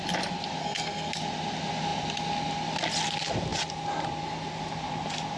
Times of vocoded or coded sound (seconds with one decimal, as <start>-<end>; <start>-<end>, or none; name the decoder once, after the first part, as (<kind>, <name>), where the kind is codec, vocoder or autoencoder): 0.6-1.1 (codec, SNAC)